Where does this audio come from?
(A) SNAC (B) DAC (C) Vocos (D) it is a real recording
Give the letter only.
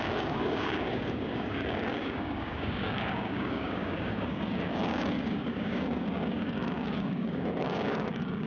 B